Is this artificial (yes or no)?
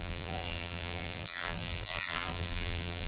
yes